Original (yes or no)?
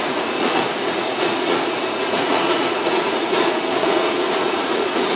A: no